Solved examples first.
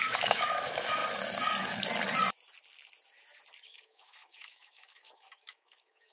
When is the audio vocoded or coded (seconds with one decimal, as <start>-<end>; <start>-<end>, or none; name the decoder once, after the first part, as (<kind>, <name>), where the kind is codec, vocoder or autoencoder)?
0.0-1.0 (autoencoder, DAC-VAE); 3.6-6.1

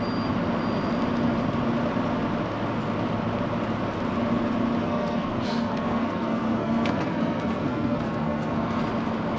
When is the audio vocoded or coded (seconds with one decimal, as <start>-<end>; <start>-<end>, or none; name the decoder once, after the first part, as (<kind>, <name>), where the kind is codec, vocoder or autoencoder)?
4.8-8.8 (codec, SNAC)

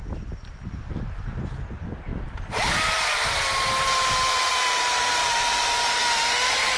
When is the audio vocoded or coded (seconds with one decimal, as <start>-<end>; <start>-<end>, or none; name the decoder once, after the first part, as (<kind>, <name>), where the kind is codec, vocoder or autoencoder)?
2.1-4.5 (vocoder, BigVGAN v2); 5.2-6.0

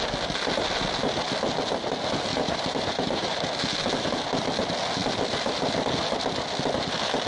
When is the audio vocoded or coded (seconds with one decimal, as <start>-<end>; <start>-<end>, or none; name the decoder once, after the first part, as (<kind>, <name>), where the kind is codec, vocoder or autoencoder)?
2.3-3.5 (vocoder, BigVGAN v2)

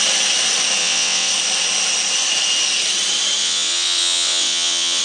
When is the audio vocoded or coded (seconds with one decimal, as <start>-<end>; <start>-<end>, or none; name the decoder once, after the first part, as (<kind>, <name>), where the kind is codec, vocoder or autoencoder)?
0.8-1.3 (vocoder, WaveNeXt); 3.4-5.0

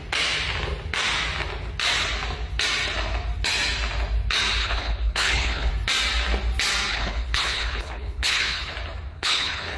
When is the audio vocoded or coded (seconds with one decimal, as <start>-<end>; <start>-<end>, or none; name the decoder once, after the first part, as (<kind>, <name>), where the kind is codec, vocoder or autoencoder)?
4.6-5.7 (codec, HILCodec); 6.9-8.7; 9.1-9.8

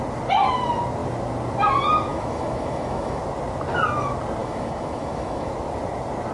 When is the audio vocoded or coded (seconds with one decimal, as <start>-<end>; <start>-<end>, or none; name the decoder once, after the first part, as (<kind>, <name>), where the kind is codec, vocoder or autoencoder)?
2.1-3.2 (autoencoder, DAC-VAE); 4.4-5.5

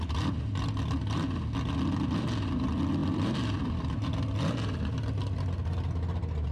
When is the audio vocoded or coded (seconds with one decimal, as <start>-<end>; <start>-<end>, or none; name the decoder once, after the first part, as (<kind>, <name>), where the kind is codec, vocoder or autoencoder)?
3.0-4.1 (vocoder, BigVGAN v2)